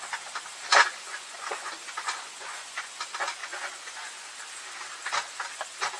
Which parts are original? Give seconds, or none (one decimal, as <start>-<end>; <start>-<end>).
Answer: 0.0-1.0; 2.9-3.4; 4.3-6.0